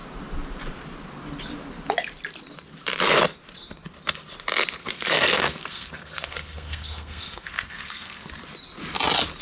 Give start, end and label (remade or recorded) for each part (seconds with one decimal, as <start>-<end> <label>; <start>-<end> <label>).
0.0-4.8 recorded; 4.8-8.3 remade; 8.3-9.4 recorded